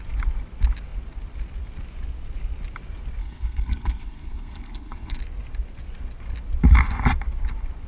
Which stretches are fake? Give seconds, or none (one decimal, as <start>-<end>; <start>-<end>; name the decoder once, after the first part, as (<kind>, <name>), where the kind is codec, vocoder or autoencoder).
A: 3.2-5.2 (codec, SNAC)